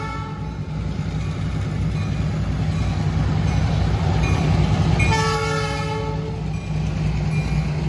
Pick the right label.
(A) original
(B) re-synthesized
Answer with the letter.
A